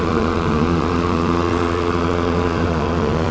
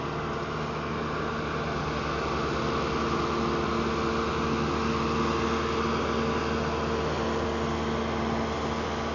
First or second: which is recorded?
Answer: second